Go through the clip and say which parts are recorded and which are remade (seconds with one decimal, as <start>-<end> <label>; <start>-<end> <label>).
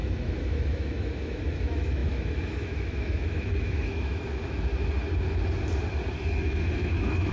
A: 0.0-4.7 remade; 4.7-6.4 recorded; 6.4-7.3 remade